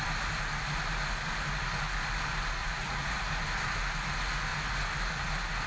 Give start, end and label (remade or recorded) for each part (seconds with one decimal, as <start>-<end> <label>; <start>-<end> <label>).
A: 0.0-2.6 recorded; 2.6-3.2 remade; 3.2-5.7 recorded